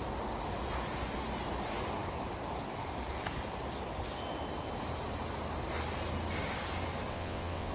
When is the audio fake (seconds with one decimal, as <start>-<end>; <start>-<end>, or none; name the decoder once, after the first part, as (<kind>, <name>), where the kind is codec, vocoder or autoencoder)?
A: 7.1-7.7 (vocoder, WaveNeXt)